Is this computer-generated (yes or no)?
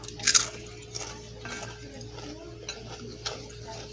no